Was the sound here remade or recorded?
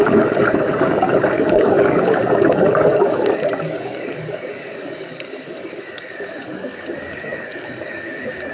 remade